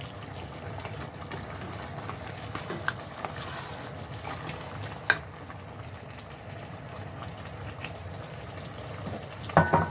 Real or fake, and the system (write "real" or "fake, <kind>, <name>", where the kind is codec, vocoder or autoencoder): real